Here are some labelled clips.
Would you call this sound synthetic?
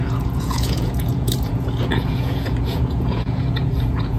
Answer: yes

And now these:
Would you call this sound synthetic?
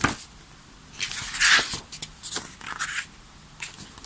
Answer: no